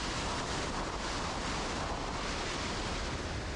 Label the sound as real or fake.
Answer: real